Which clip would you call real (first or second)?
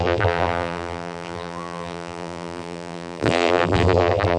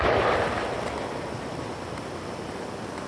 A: second